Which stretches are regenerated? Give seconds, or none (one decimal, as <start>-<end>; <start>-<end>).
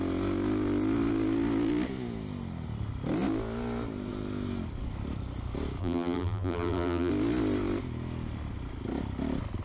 5.8-7.1